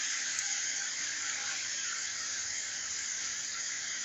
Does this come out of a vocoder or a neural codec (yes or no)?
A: yes